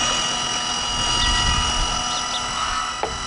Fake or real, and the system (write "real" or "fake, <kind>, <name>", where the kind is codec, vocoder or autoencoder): real